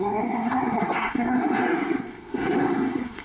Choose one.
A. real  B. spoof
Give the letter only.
B